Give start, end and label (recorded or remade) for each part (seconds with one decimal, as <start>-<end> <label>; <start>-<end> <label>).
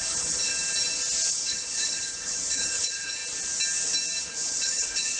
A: 0.0-0.5 remade; 0.5-1.3 recorded; 1.3-3.2 remade; 3.2-4.2 recorded; 4.2-5.2 remade